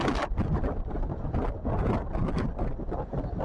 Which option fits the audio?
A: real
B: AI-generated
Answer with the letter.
A